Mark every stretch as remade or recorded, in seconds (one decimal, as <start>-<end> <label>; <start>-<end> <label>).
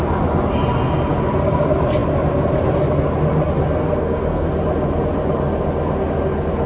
0.0-3.8 recorded; 3.8-4.5 remade; 4.5-6.7 recorded